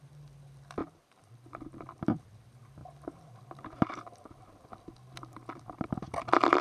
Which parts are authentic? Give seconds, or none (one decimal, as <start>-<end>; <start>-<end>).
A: none

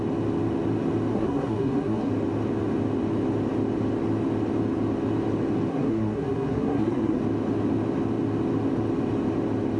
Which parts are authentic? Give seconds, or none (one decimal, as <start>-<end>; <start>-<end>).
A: 0.0-1.1; 2.1-5.7; 7.2-9.8

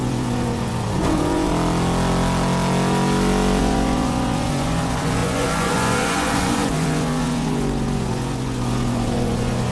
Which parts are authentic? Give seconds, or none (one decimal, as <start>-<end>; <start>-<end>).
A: 1.5-3.6

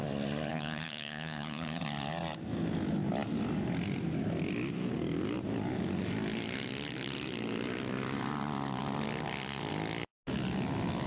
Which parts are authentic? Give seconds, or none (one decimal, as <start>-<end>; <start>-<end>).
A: 0.0-0.5; 1.8-11.1

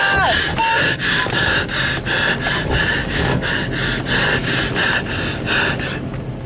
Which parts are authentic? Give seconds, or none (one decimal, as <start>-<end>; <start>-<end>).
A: 0.0-0.7; 1.7-3.0; 3.7-6.5

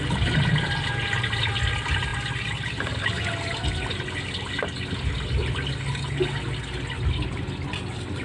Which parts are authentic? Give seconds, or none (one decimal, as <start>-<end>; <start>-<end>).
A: 0.0-8.2